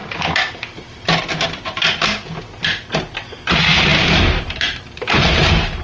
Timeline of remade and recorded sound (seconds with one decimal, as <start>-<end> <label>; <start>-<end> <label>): 0.0-3.5 recorded; 3.5-5.8 remade